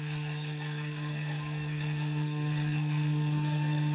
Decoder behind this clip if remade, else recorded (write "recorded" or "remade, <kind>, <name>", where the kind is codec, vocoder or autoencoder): remade, codec, SNAC